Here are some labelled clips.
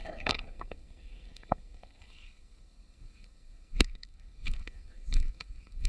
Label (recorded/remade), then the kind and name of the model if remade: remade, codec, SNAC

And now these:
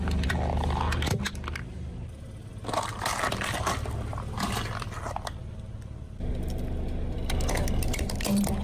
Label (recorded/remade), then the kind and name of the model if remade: recorded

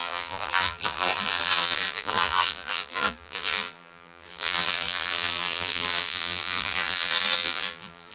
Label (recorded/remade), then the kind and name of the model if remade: remade, vocoder, BigVGAN v2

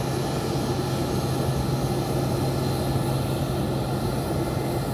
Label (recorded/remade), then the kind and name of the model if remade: recorded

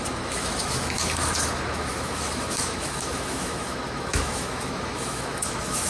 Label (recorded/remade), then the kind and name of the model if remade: remade, autoencoder, DAC-VAE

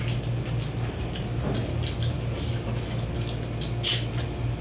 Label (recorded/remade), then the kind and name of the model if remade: recorded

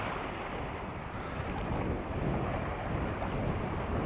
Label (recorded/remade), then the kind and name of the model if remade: recorded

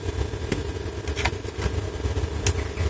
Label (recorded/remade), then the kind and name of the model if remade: recorded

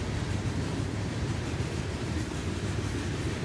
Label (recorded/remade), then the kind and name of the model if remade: recorded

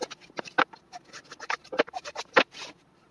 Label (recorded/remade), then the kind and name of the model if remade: recorded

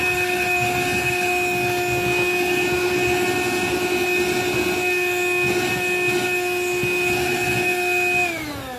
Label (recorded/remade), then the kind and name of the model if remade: recorded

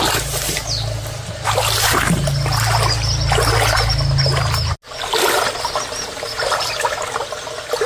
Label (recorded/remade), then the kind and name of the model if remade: recorded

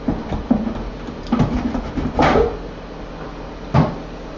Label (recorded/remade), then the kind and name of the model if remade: recorded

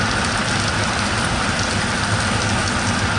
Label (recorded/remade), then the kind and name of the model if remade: recorded